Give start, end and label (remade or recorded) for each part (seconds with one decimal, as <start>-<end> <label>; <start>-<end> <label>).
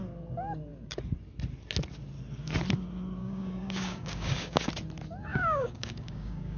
0.0-3.2 recorded; 3.2-4.7 remade; 4.7-5.3 recorded; 5.3-6.6 remade